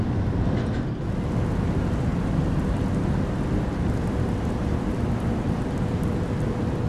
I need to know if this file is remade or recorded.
recorded